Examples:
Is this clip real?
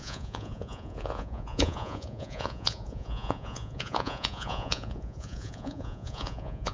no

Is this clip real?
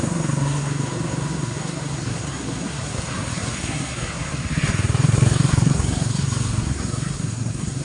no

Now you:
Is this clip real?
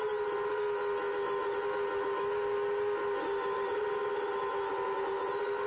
yes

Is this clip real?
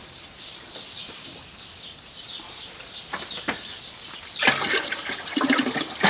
yes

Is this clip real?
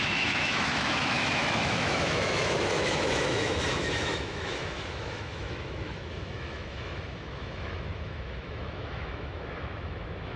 no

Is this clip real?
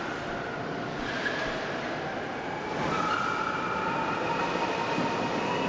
yes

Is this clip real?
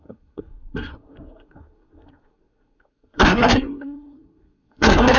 no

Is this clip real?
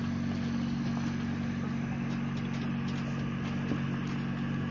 yes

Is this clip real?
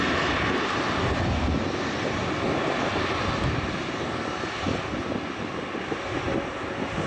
yes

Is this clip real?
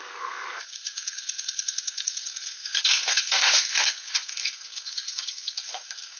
no